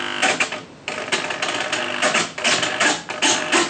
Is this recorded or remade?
recorded